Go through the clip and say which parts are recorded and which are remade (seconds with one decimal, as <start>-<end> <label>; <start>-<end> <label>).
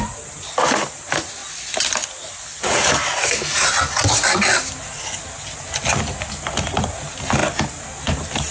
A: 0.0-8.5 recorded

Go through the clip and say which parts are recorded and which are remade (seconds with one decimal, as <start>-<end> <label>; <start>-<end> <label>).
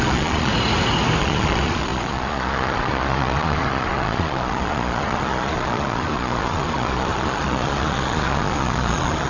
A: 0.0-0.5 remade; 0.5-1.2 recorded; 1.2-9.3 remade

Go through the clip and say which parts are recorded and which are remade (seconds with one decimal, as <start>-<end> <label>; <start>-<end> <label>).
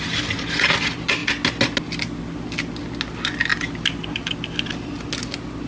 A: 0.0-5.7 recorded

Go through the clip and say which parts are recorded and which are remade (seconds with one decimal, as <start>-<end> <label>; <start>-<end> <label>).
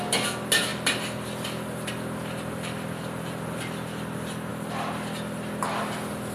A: 0.0-6.3 recorded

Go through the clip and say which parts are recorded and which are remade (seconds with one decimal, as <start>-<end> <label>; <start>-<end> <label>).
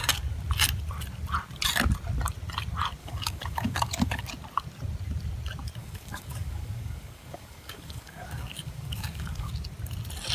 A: 0.0-3.0 recorded; 3.0-4.3 remade; 4.3-5.8 recorded; 5.8-9.5 remade; 9.5-10.3 recorded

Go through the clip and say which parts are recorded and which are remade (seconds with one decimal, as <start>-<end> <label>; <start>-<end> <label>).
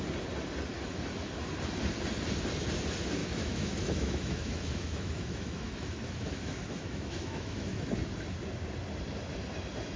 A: 0.0-3.2 recorded; 3.2-7.9 remade; 7.9-10.0 recorded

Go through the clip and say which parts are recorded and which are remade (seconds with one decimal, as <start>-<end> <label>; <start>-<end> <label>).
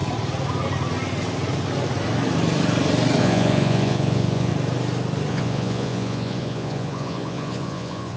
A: 0.0-3.2 recorded; 3.2-4.5 remade; 4.5-5.3 recorded; 5.3-8.2 remade